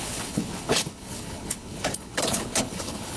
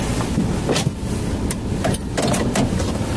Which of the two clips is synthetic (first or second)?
first